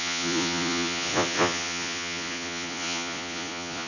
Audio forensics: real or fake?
fake